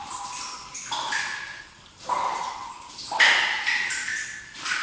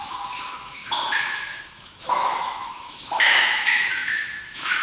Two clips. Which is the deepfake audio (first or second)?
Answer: second